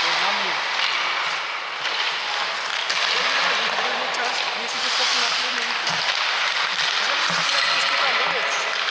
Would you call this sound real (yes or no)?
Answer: no